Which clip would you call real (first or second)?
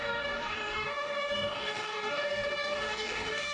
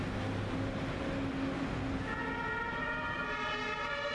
second